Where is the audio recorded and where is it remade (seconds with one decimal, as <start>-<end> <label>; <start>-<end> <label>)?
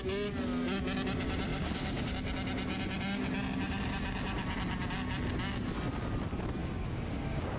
0.0-1.5 recorded; 1.5-2.1 remade; 2.1-6.6 recorded; 6.6-7.6 remade